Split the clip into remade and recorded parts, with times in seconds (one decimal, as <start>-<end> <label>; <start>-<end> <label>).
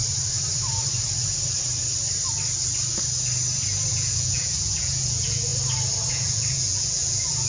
0.0-3.9 recorded; 3.9-5.5 remade; 5.5-6.1 recorded; 6.1-7.5 remade